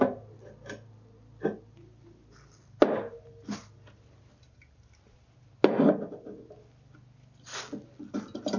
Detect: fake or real real